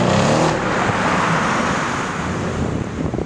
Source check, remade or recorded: recorded